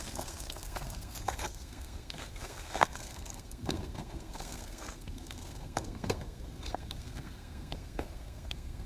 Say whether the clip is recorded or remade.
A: remade